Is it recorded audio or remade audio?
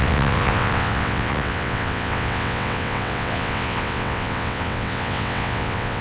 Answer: remade